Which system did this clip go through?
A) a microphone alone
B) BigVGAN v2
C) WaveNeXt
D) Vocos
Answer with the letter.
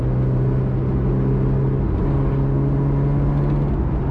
A